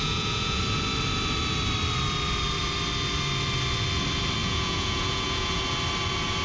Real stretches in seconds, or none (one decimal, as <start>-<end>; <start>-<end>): 0.6-4.4; 5.6-6.4

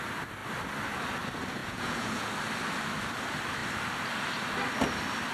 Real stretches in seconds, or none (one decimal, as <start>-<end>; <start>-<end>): 0.0-1.6; 2.3-5.3

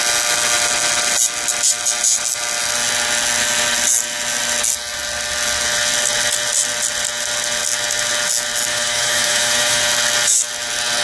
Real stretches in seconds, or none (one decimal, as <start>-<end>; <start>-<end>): 0.0-8.7; 9.8-11.0

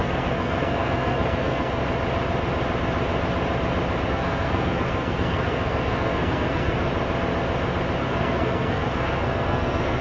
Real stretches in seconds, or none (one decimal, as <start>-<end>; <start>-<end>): 1.8-4.1; 6.9-8.0

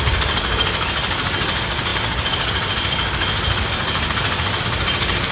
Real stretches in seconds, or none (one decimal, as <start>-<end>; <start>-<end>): 0.0-5.3

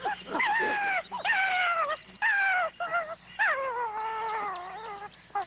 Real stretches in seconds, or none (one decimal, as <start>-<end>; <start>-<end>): 0.0-1.3; 1.8-5.5

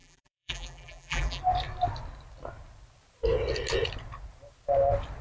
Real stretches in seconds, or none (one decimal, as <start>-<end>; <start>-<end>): 1.4-5.2